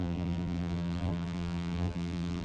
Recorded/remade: remade